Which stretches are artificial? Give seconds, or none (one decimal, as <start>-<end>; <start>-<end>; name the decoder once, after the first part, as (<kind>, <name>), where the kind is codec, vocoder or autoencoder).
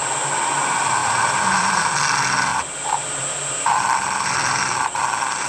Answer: 1.0-1.8 (vocoder, BigVGAN v2); 2.5-4.6